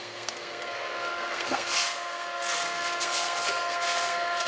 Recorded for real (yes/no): no